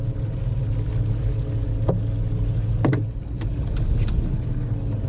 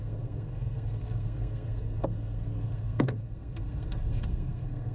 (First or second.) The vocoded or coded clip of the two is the second